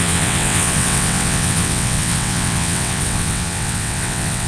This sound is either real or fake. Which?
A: fake